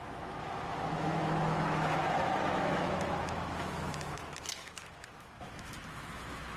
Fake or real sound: fake